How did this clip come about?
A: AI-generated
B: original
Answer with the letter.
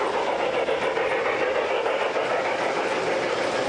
B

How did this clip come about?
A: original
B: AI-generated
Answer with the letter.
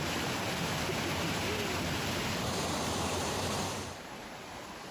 B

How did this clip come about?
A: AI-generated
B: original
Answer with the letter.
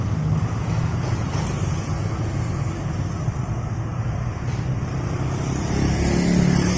B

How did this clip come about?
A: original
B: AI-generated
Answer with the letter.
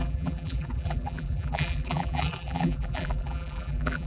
B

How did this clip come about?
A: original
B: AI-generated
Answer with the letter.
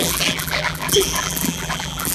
B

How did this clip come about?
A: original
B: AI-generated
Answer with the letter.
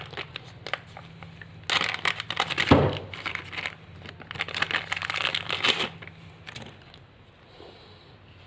A